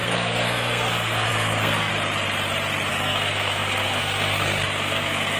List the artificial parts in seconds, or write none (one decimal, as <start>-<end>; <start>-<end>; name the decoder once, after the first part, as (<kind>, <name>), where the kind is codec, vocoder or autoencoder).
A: 0.0-1.9 (codec, SNAC); 2.9-5.4